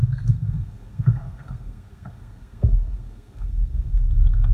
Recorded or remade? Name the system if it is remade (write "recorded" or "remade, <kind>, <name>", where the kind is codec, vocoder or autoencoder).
remade, codec, SNAC